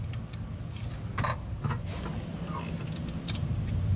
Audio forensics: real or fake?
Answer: real